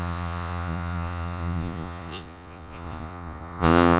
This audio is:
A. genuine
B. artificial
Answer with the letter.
B